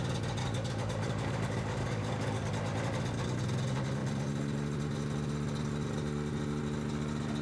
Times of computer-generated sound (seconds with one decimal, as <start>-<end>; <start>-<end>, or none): 0.4-2.5